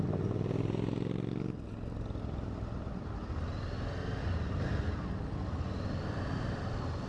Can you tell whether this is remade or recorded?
recorded